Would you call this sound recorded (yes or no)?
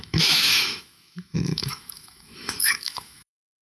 no